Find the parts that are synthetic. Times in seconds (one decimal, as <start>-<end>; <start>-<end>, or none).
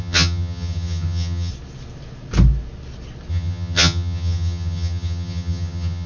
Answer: 0.0-1.5; 3.3-6.1